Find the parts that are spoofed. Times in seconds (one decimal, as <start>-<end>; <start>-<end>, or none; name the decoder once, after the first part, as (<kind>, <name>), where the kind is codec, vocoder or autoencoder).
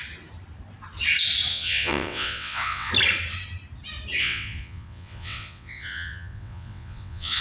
1.5-2.9 (vocoder, WaveNeXt); 4.2-7.4